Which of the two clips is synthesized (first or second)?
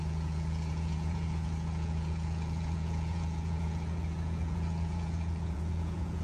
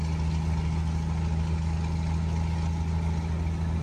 first